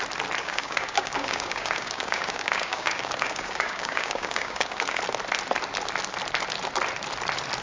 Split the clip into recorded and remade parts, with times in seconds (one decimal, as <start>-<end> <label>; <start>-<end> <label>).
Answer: 0.0-0.4 recorded; 0.4-5.0 remade; 5.0-7.6 recorded